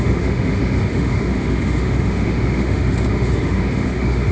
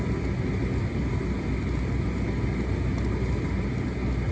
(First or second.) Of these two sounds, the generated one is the first